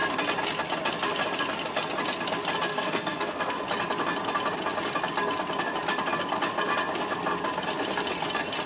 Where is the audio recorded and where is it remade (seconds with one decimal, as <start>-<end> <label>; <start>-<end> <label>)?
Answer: 0.0-2.7 recorded; 2.7-3.6 remade; 3.6-8.7 recorded